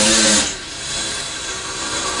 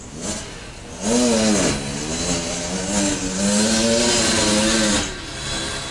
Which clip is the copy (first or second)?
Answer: first